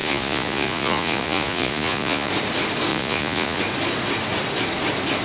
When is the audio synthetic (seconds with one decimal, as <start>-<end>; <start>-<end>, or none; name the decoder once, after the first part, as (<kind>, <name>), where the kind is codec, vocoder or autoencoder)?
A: 0.0-2.3 (vocoder, Vocos); 2.9-3.6